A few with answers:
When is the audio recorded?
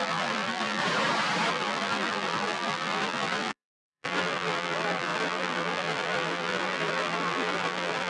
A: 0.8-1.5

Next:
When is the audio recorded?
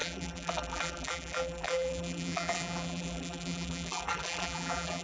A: none